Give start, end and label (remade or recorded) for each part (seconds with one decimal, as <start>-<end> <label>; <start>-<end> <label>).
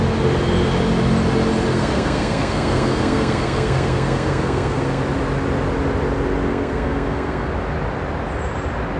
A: 0.0-1.7 recorded; 1.7-5.0 remade; 5.0-6.5 recorded; 6.5-7.5 remade; 7.5-9.0 recorded